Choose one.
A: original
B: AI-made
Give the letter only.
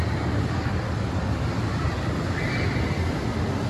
A